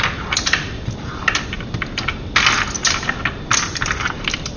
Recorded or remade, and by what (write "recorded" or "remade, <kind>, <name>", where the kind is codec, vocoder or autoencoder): recorded